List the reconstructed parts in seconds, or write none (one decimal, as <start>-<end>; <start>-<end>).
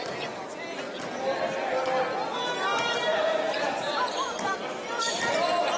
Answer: 2.7-3.7